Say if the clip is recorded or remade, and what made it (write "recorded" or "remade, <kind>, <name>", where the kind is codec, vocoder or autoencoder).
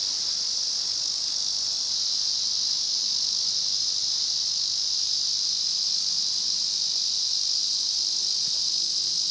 recorded